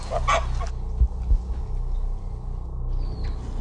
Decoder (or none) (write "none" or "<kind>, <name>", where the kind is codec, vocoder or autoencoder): none